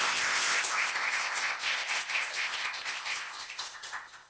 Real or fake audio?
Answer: fake